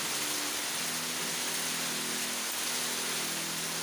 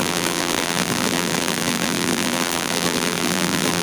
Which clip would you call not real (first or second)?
second